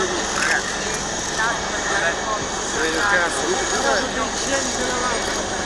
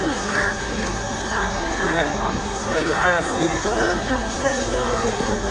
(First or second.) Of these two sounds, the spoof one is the second